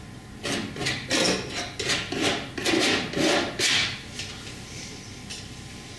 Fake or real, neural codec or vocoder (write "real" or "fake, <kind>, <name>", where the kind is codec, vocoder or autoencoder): real